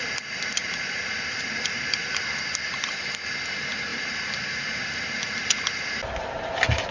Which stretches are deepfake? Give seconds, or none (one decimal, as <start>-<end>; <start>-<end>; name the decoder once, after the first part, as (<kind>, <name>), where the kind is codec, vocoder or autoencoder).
none